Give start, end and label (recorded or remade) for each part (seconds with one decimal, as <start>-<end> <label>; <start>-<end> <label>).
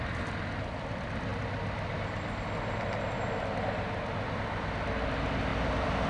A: 0.0-6.1 recorded